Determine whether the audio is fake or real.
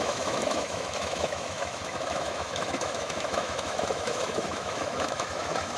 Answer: fake